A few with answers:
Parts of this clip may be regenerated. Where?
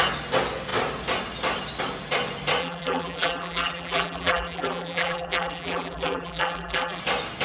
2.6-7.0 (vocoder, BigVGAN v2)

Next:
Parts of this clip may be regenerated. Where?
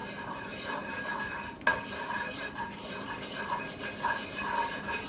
0.0-0.8 (vocoder, BigVGAN v2); 1.7-3.4